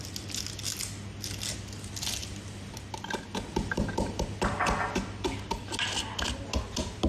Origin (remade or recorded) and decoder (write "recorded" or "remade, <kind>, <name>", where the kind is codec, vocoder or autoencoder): recorded